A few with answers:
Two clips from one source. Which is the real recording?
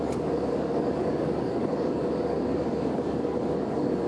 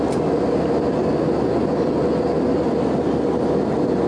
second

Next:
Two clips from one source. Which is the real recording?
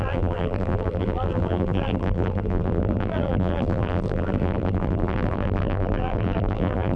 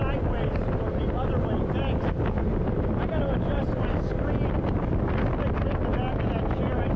second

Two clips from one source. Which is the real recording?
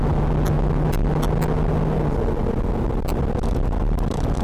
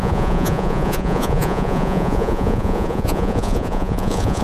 first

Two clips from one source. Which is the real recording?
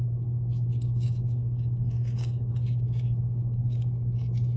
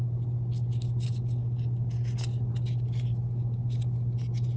second